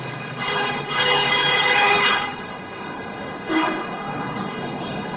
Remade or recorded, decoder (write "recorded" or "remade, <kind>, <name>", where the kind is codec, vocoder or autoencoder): remade, codec, HILCodec